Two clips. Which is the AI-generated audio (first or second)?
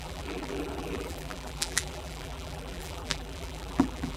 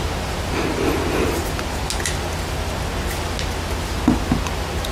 first